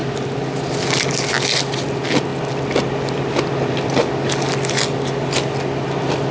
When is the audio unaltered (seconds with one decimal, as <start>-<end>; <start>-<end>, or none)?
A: 0.0-6.3